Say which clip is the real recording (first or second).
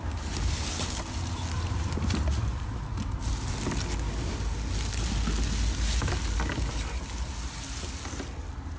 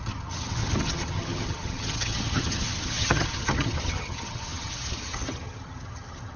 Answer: first